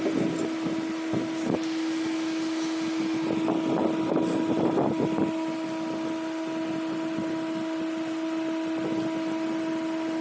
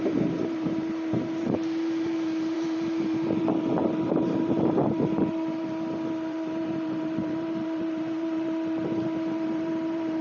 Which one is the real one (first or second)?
first